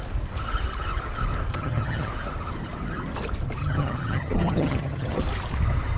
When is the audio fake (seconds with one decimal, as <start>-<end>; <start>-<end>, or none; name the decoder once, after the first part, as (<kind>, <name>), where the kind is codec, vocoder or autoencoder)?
1.5-2.1 (vocoder, HiFi-GAN); 3.6-5.2